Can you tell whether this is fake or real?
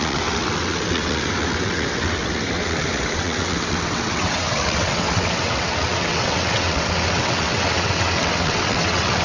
fake